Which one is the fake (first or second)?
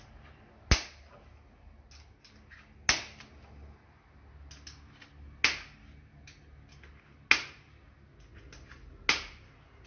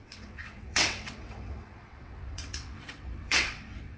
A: second